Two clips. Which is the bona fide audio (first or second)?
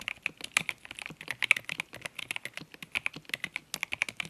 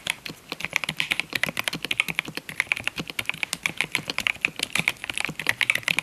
first